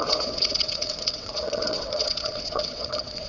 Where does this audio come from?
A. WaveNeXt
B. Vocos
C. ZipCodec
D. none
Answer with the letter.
A